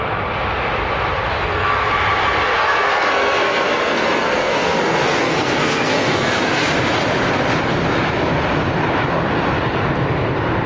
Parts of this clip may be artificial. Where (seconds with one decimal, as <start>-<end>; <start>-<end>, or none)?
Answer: 1.3-1.9; 2.5-6.6